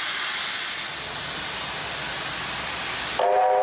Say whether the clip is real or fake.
real